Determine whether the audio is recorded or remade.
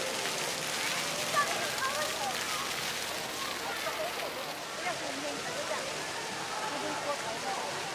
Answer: recorded